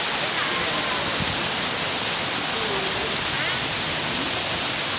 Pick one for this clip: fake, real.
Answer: real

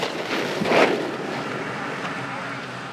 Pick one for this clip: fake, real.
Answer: real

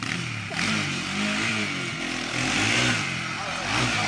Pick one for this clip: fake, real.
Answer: real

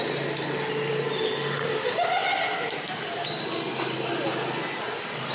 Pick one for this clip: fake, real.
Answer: real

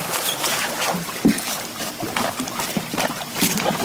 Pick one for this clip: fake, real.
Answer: fake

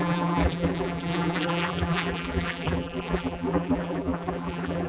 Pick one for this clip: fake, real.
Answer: fake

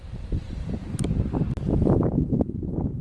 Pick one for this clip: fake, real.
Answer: fake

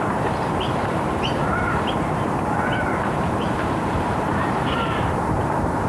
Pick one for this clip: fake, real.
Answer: fake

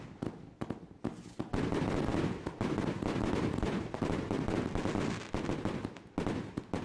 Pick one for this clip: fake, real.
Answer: real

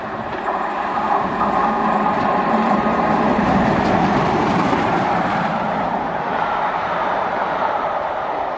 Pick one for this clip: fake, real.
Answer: fake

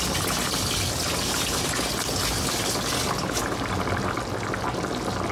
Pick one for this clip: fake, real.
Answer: real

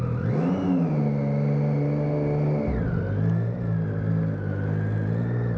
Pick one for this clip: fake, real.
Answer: real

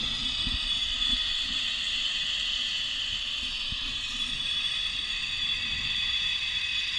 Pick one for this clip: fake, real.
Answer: real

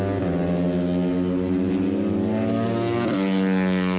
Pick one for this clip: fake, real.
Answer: real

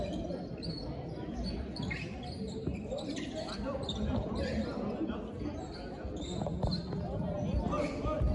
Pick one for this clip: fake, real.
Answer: real